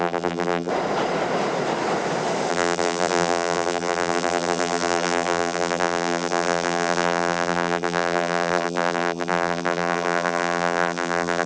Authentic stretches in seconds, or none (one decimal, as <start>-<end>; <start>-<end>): 0.7-2.5